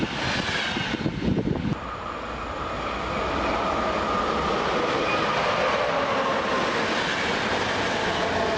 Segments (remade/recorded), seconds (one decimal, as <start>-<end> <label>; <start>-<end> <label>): 0.0-8.6 recorded